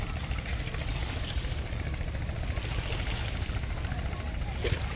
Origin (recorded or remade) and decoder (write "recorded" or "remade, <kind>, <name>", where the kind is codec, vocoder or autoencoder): recorded